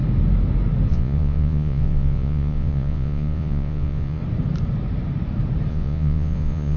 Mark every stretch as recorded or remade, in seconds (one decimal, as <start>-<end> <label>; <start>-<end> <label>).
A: 0.0-0.9 recorded; 0.9-4.2 remade; 4.2-5.7 recorded; 5.7-6.8 remade